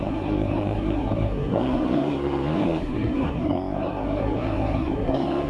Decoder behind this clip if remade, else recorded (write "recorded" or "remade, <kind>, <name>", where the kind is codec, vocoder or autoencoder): remade, codec, SNAC